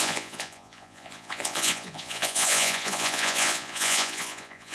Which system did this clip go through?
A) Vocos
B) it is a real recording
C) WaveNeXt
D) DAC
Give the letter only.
A